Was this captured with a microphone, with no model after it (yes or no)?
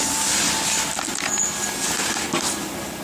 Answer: yes